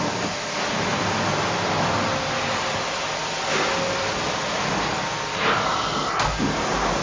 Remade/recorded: recorded